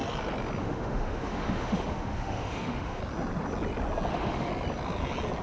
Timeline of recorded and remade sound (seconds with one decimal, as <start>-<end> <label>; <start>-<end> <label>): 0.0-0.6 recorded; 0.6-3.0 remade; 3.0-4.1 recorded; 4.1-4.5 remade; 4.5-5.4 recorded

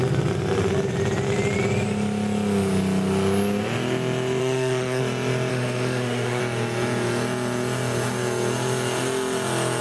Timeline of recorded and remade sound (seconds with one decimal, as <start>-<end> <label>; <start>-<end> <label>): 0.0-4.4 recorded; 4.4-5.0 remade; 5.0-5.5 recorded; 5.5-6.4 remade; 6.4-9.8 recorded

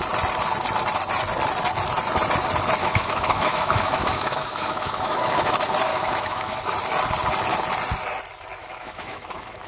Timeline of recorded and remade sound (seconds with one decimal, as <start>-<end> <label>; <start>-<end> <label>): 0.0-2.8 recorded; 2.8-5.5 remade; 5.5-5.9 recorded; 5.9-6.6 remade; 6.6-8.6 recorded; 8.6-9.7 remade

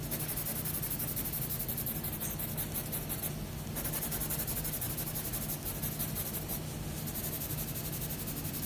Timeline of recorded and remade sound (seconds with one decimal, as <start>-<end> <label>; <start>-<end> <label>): 0.0-8.7 recorded